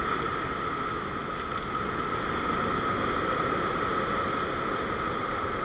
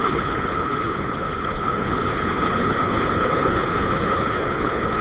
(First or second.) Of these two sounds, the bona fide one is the first